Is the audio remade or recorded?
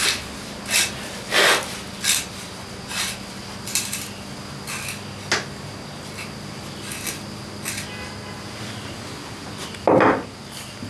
recorded